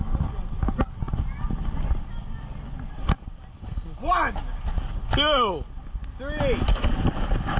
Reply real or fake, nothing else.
real